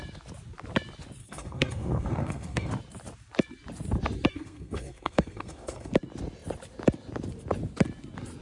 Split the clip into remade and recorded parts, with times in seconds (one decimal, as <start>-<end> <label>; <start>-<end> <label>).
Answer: 0.0-1.2 recorded; 1.2-2.7 remade; 2.7-4.3 recorded; 4.3-5.9 remade; 5.9-8.4 recorded